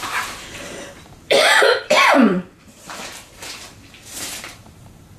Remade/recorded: remade